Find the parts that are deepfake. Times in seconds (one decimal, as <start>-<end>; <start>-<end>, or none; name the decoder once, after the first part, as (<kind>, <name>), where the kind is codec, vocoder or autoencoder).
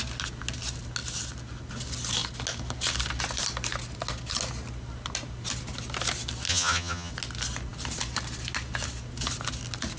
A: 6.5-7.1 (vocoder, HiFi-GAN)